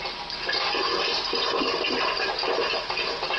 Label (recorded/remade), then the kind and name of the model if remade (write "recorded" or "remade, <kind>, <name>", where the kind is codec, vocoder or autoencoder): recorded